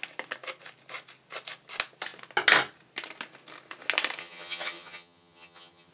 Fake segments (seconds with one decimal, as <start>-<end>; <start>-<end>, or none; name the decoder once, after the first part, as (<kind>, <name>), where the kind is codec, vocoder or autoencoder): 4.2-5.9 (vocoder, HiFi-GAN)